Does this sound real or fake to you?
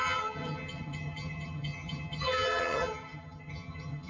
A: fake